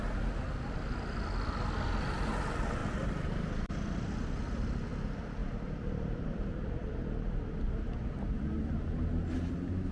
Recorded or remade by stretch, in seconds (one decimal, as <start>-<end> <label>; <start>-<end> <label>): 0.0-2.8 recorded; 2.8-4.1 remade; 4.1-5.4 recorded; 5.4-6.9 remade; 6.9-9.9 recorded